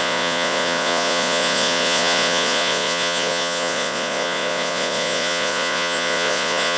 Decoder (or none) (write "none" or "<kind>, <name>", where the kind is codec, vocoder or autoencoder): vocoder, Vocos